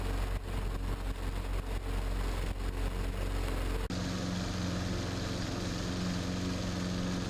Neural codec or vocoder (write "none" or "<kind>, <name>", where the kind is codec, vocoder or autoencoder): none